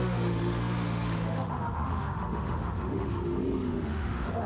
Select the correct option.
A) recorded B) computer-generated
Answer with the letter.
B